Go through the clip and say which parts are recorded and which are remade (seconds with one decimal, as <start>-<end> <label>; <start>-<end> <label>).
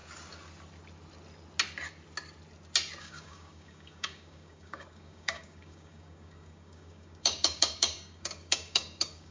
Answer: 0.0-3.0 recorded; 3.0-9.3 remade